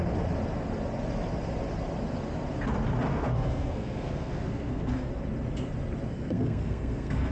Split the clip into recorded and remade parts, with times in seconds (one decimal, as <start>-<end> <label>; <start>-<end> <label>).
0.0-3.1 recorded; 3.1-5.1 remade; 5.1-6.1 recorded; 6.1-7.3 remade